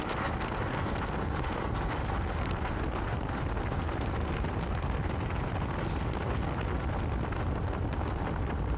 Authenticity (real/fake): real